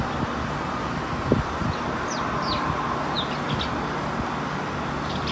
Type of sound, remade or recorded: recorded